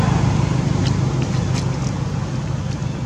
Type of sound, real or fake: real